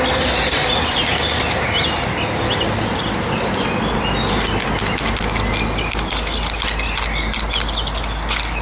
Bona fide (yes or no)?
yes